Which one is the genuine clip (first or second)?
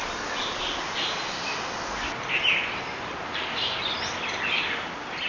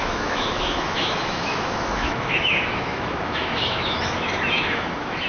first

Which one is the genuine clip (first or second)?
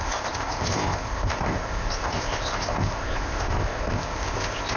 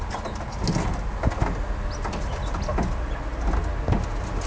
second